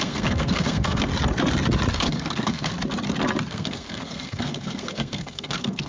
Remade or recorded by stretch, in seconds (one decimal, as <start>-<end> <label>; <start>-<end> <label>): 0.0-1.1 remade; 1.1-2.0 recorded; 2.0-2.7 remade; 2.7-3.5 recorded; 3.5-5.9 remade